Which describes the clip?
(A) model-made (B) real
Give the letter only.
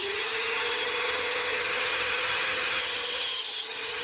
A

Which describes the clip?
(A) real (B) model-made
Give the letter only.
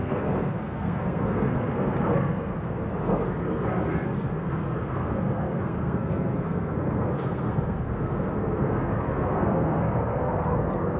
B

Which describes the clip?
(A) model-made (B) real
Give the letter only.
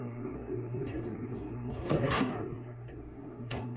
A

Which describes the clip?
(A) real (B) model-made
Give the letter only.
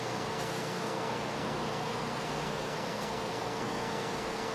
B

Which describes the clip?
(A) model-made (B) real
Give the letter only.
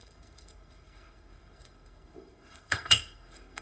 A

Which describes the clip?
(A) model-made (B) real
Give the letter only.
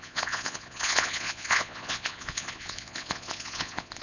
A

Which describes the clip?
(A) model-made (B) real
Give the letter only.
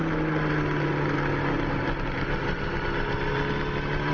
B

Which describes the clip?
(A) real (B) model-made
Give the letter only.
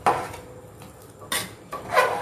B